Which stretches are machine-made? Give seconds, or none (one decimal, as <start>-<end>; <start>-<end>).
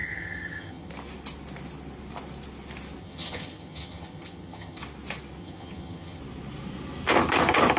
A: 0.0-0.9; 3.0-4.8; 5.4-6.2